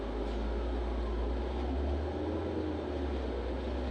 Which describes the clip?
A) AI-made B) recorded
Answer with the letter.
B